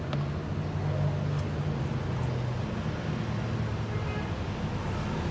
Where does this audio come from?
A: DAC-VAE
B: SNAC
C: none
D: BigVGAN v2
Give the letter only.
C